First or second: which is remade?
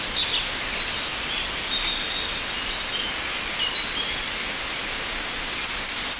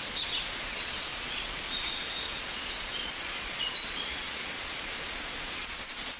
second